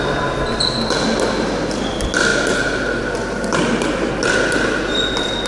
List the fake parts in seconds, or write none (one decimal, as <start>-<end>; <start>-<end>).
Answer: none